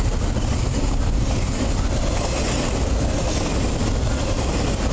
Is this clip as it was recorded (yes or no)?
yes